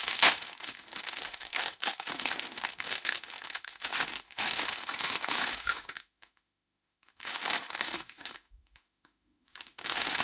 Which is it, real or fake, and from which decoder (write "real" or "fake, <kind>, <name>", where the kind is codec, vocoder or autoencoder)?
fake, autoencoder, DAC-VAE